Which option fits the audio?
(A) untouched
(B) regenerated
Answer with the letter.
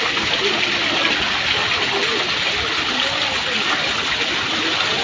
A